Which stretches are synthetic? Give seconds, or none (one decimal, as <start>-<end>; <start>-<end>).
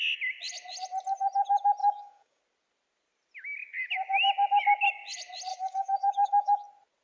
1.8-2.4; 5.5-6.6